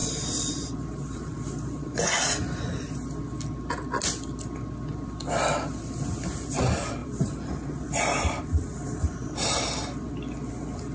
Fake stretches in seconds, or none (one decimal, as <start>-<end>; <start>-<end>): 0.0-2.2; 7.0-10.1